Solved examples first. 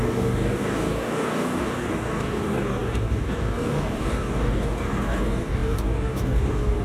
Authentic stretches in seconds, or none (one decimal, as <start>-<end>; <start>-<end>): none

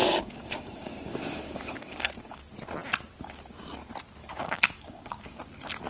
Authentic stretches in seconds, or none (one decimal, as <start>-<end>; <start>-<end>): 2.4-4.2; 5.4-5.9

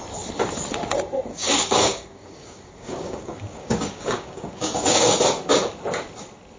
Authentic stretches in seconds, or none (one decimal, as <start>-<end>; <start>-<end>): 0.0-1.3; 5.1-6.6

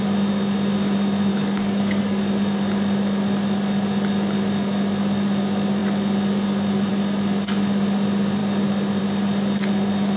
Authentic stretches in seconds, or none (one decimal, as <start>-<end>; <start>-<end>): 0.0-1.3; 2.2-10.2

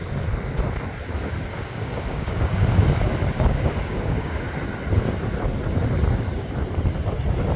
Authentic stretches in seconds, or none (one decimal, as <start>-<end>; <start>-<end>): 0.0-1.5; 4.4-7.6

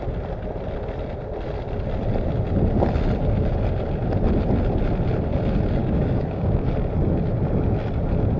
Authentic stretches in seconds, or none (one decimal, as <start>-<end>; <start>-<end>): 0.0-5.8; 6.7-8.4